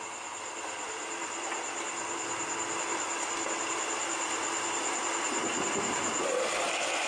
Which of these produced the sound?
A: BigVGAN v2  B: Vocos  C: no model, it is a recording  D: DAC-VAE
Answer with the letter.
C